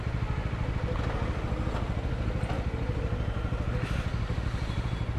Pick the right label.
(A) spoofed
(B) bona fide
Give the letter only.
B